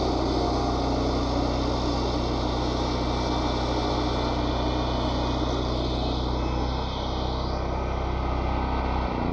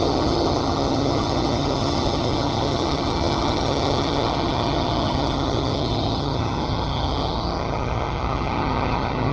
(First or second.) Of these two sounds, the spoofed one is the second